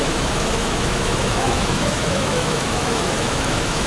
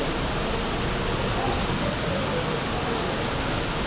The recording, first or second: second